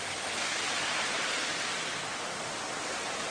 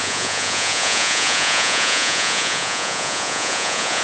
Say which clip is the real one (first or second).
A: first